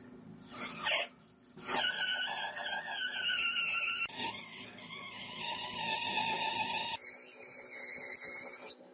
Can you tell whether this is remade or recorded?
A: recorded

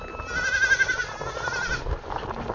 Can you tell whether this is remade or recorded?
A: recorded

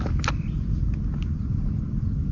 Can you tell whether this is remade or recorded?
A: recorded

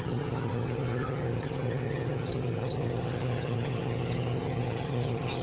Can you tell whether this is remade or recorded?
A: remade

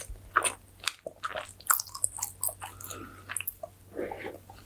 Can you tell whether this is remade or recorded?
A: recorded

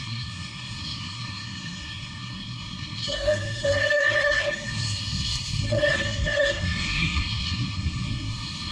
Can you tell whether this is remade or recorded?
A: remade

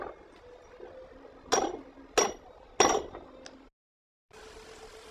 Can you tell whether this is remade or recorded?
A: recorded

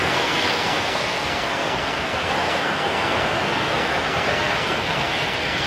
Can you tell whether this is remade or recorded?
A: remade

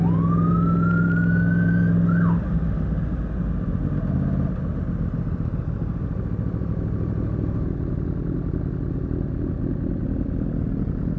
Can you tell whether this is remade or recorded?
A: recorded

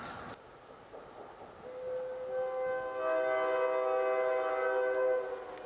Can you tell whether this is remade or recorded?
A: recorded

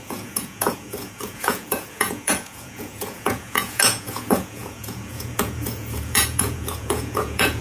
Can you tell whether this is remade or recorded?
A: remade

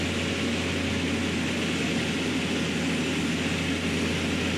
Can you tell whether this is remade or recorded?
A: recorded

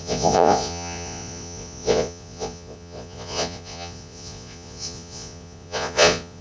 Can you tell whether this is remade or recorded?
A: remade